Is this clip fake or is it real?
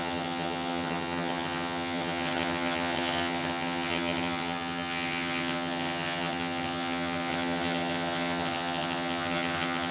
fake